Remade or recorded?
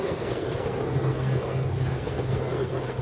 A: remade